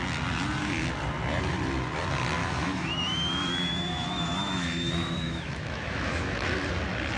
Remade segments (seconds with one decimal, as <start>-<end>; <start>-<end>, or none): 2.4-6.7